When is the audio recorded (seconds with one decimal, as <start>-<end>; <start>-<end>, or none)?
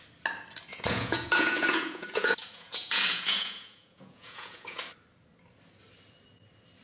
0.0-0.7; 4.8-6.8